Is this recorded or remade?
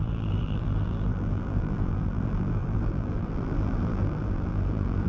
remade